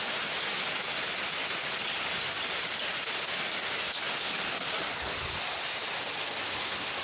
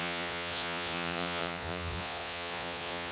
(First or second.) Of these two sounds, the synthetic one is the second